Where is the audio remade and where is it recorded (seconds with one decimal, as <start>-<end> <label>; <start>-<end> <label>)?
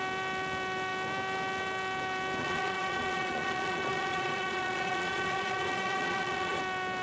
0.0-2.4 recorded; 2.4-6.6 remade; 6.6-7.0 recorded